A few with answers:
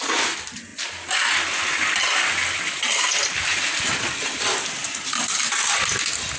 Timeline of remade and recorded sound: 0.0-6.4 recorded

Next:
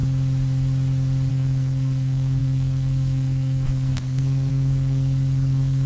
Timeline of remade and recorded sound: 0.0-1.3 recorded; 1.3-5.9 remade

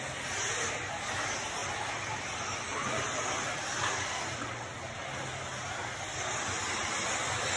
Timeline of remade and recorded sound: 0.0-7.6 recorded